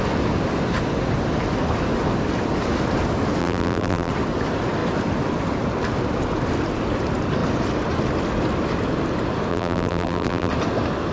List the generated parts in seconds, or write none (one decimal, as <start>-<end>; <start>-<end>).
3.4-4.1; 9.5-10.5